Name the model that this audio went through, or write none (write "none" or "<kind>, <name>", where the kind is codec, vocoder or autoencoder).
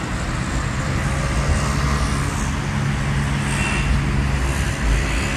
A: none